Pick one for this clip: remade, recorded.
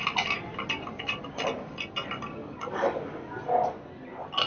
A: recorded